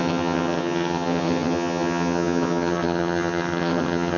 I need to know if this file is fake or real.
fake